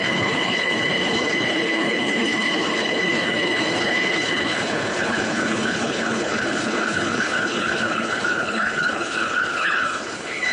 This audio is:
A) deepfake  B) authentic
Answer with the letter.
A